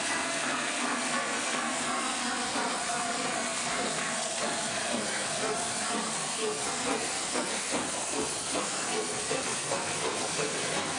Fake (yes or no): yes